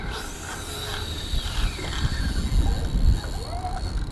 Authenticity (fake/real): real